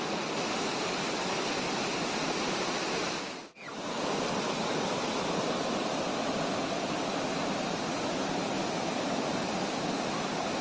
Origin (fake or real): real